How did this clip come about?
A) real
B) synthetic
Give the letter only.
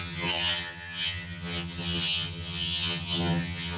B